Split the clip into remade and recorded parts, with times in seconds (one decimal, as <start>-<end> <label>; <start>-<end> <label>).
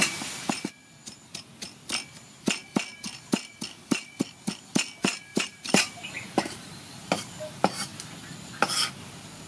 0.0-5.3 recorded; 5.3-7.5 remade; 7.5-9.5 recorded